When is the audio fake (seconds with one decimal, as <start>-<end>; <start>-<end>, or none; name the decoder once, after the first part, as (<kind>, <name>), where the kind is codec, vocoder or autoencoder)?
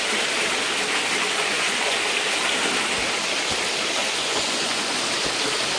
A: 1.2-2.0 (vocoder, Vocos); 4.0-5.0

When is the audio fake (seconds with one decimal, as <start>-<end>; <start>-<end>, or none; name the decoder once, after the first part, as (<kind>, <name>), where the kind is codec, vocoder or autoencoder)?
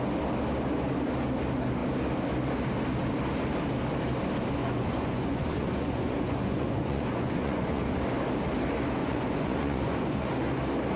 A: 4.6-7.8 (vocoder, Vocos); 9.0-10.3